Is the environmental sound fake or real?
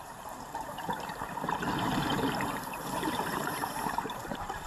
fake